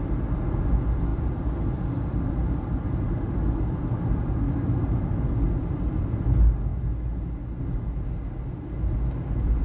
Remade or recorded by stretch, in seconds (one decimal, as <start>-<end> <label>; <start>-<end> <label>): 0.0-1.1 recorded; 1.1-6.2 remade; 6.2-9.6 recorded

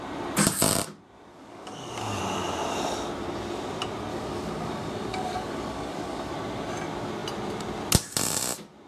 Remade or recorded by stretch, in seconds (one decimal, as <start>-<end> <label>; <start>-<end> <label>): 0.0-1.3 recorded; 1.3-2.2 remade; 2.2-4.1 recorded; 4.1-6.3 remade; 6.3-8.9 recorded

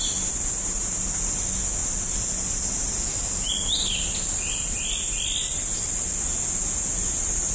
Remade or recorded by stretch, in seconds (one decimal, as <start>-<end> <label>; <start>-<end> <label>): 0.0-7.5 recorded

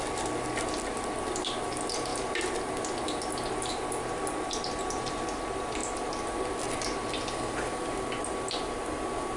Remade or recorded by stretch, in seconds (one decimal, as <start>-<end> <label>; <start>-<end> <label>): 0.0-9.4 recorded

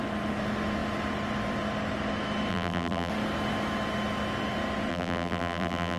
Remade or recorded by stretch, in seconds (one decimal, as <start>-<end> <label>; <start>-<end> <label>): 0.0-2.5 recorded; 2.5-3.1 remade; 3.1-4.9 recorded; 4.9-6.0 remade

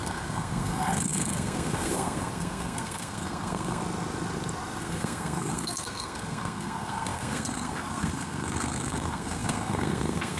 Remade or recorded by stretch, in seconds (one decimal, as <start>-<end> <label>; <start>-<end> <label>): 0.0-3.8 remade; 3.8-4.8 recorded; 4.8-10.4 remade